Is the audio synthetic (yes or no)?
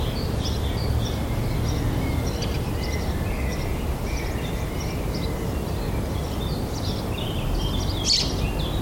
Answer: no